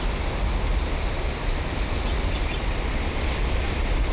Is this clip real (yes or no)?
yes